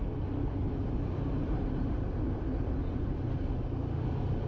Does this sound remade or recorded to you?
recorded